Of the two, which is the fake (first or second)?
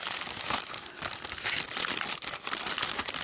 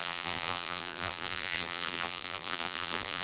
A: second